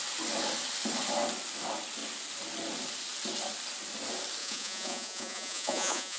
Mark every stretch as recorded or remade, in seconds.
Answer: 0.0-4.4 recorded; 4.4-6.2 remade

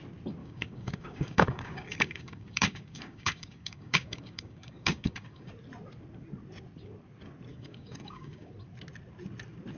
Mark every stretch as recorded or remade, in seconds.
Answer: 0.0-0.4 recorded; 0.4-5.5 remade; 5.5-7.5 recorded; 7.5-8.5 remade; 8.5-9.8 recorded

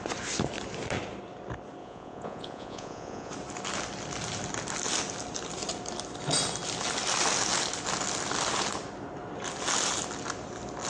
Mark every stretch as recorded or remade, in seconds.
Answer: 0.0-1.8 recorded; 1.8-3.3 remade; 3.3-10.9 recorded

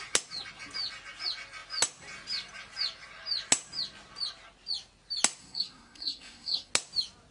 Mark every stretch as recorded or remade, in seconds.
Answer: 0.0-5.4 recorded; 5.4-6.7 remade; 6.7-7.3 recorded